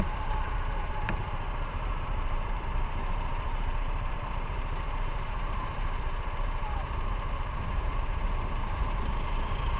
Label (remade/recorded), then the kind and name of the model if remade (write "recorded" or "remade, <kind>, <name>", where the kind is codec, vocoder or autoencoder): remade, vocoder, BigVGAN v2